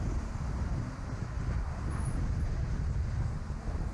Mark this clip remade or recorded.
recorded